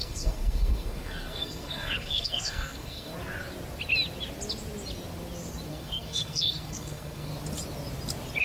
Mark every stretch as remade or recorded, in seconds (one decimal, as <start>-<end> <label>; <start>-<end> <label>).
0.0-3.1 remade; 3.1-5.7 recorded; 5.7-7.3 remade; 7.3-8.4 recorded